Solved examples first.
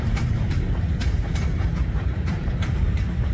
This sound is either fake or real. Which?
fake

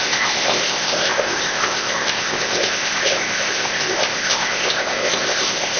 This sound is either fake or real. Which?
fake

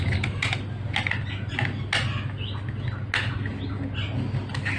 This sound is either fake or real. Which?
real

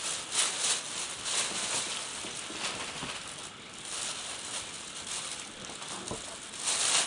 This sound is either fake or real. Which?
real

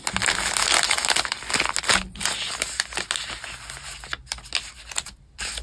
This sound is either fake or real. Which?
real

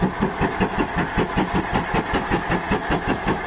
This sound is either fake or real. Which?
real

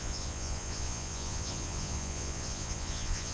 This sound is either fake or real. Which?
fake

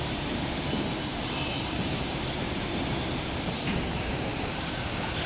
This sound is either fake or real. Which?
fake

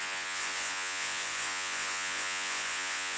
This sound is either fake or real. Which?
fake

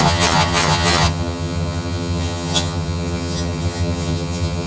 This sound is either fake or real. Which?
fake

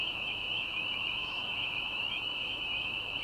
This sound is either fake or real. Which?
fake